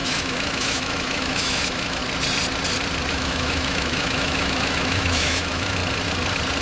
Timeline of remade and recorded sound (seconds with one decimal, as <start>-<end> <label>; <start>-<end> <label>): 0.0-2.0 remade; 2.0-3.1 recorded; 3.1-5.8 remade; 5.8-6.6 recorded